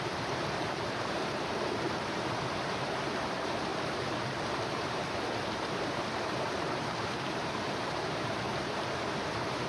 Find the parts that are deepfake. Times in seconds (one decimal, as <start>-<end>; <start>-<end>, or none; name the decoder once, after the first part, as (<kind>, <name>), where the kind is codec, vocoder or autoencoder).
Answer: 0.0-9.7 (vocoder, BigVGAN v2)